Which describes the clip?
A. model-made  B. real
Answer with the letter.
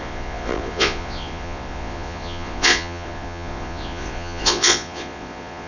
A